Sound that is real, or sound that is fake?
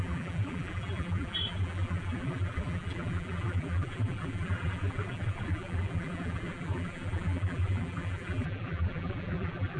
fake